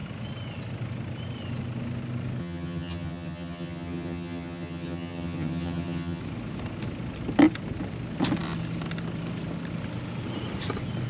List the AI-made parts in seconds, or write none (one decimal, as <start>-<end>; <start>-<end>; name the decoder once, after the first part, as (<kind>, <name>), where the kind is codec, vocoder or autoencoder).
2.4-6.2 (vocoder, HiFi-GAN)